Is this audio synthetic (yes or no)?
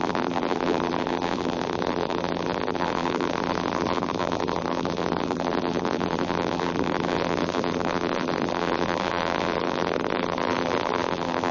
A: yes